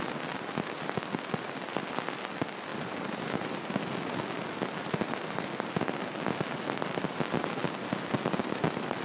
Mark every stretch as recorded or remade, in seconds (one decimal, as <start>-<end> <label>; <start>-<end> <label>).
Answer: 0.0-9.0 recorded